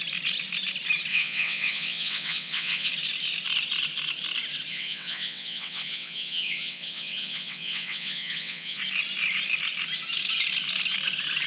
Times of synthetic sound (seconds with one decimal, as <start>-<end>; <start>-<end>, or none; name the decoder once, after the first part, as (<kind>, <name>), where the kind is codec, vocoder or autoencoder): 1.1-2.9 (vocoder, WaveNeXt); 4.7-8.8